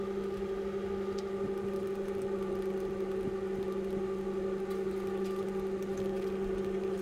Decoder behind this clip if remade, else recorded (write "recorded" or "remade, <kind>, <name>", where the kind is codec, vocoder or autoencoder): recorded